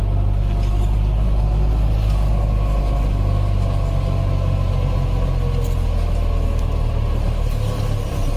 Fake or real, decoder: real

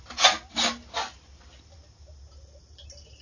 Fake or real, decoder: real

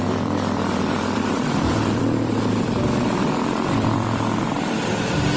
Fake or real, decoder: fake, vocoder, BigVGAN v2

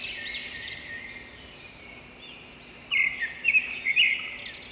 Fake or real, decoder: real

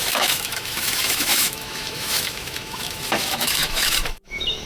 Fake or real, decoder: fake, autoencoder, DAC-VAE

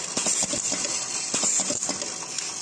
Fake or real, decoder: real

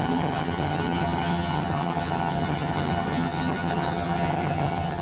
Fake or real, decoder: fake, vocoder, HiFi-GAN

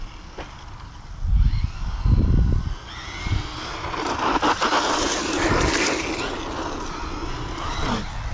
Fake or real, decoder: real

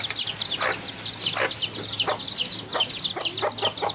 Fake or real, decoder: real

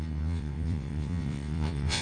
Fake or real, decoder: fake, vocoder, WaveNeXt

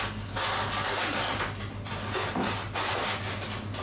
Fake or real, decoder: real